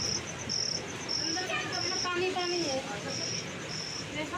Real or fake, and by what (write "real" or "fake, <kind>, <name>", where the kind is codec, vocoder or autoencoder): real